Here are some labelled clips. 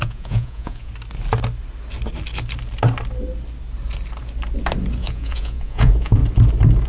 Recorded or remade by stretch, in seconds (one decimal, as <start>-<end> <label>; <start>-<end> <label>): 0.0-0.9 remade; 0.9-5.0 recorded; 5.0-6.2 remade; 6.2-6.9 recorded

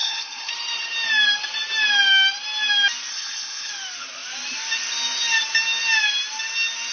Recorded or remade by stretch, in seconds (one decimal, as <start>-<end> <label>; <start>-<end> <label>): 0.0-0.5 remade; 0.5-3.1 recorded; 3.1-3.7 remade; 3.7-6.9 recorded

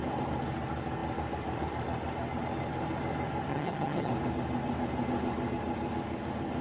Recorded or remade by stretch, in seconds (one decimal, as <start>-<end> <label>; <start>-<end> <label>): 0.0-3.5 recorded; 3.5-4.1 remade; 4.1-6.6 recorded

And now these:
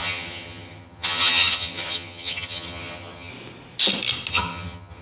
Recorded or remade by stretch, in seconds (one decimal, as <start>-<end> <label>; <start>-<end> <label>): 0.0-3.3 remade; 3.3-4.3 recorded; 4.3-5.0 remade

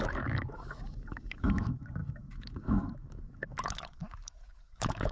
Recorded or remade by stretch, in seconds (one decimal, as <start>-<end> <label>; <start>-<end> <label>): 0.0-5.1 remade

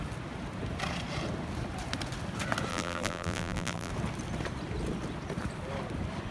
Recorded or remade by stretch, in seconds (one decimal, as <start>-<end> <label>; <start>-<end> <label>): 0.0-2.7 recorded; 2.7-3.9 remade; 3.9-6.3 recorded

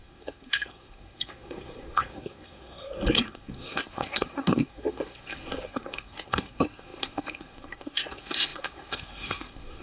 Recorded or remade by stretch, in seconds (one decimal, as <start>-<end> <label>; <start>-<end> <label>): 0.0-9.8 remade